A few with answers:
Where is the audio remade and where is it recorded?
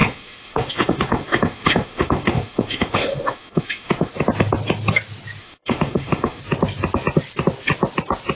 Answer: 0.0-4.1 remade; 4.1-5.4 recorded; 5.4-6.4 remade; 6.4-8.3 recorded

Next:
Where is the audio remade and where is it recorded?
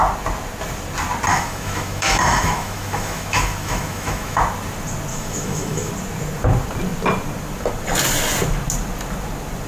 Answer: 0.0-1.3 recorded; 1.3-4.4 remade; 4.4-5.1 recorded; 5.1-5.9 remade; 5.9-9.7 recorded